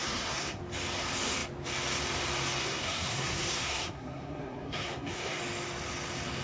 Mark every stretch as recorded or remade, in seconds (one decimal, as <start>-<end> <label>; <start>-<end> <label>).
0.0-0.6 remade; 0.6-2.6 recorded; 2.6-5.4 remade; 5.4-6.4 recorded